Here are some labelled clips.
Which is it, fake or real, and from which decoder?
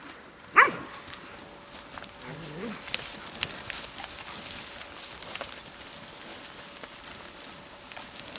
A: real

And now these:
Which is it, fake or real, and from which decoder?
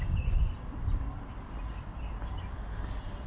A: real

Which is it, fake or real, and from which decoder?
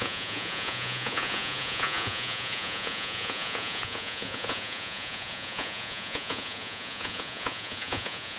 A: fake, vocoder, Vocos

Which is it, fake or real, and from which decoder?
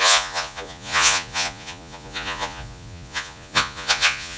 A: fake, vocoder, Vocos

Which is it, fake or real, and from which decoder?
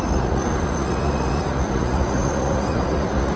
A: fake, vocoder, Vocos